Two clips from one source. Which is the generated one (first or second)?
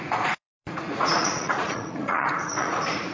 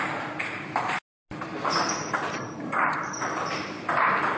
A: first